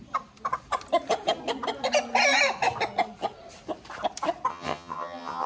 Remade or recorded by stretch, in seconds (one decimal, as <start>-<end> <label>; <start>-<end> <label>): 0.0-4.5 recorded; 4.5-5.5 remade